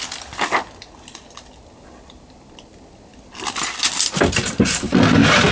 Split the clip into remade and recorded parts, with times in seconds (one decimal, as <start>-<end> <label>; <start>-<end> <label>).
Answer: 0.0-5.5 recorded